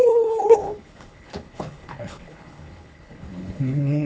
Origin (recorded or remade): remade